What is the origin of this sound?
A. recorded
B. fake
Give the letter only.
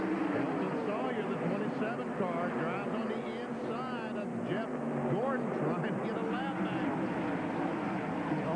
A